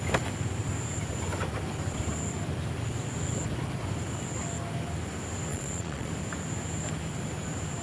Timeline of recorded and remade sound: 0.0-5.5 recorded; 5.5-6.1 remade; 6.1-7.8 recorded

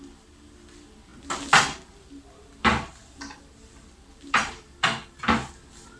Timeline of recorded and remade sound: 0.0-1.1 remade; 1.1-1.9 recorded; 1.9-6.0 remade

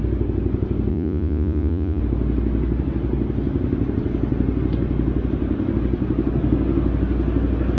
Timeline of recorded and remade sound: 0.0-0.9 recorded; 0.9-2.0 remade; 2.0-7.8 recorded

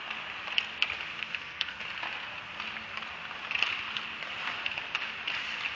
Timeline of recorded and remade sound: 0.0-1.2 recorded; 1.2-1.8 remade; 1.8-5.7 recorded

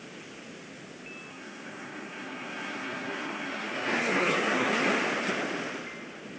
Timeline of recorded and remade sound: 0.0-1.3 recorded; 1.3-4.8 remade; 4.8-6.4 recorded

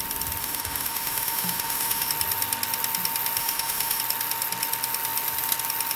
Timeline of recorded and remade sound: 0.0-0.4 recorded; 0.4-2.1 remade; 2.1-3.4 recorded; 3.4-4.0 remade; 4.0-6.0 recorded

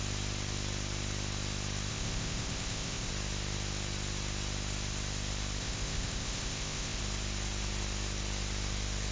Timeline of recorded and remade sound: 0.0-1.9 recorded; 1.9-3.1 remade; 3.1-5.6 recorded; 5.6-7.0 remade; 7.0-9.1 recorded

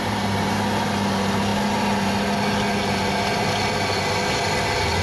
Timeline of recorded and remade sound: 0.0-5.0 recorded